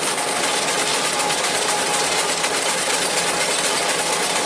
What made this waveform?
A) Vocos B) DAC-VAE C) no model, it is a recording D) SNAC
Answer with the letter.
C